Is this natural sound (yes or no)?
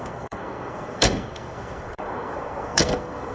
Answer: no